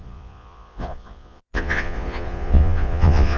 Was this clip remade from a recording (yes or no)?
yes